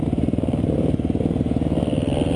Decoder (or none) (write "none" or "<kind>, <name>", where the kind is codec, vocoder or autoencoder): none